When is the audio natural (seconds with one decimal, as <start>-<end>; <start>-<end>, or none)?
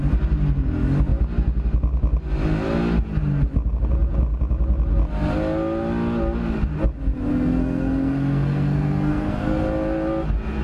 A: 0.0-7.3; 9.6-10.6